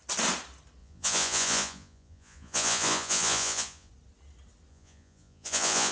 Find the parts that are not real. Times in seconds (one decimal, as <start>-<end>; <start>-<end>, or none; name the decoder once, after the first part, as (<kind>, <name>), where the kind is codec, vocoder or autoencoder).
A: 0.8-3.9 (vocoder, Vocos); 4.7-5.9